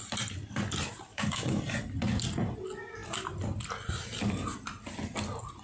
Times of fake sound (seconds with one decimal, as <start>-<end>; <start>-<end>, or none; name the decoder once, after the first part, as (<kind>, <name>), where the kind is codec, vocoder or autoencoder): 1.1-1.6 (autoencoder, DAC-VAE)